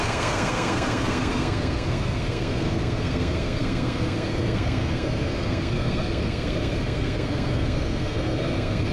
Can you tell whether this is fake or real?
fake